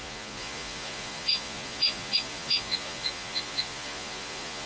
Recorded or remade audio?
remade